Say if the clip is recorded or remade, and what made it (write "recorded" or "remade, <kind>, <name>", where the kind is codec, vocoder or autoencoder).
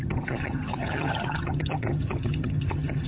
remade, vocoder, HiFi-GAN